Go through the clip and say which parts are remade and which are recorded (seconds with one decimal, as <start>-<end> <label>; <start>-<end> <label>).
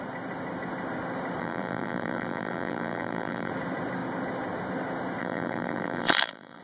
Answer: 0.0-1.4 recorded; 1.4-3.5 remade; 3.5-5.2 recorded; 5.2-6.6 remade